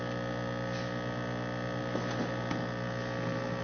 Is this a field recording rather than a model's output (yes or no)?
yes